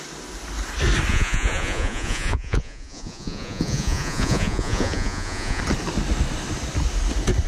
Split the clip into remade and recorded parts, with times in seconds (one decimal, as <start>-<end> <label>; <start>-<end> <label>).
0.0-1.1 recorded; 1.1-5.6 remade; 5.6-7.5 recorded